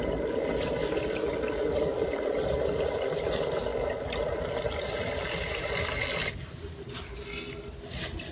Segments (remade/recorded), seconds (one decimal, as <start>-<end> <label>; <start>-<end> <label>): 0.0-8.3 recorded